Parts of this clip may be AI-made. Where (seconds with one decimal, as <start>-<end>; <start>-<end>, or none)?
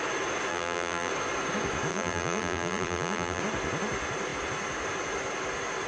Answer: 0.5-1.1; 1.9-3.4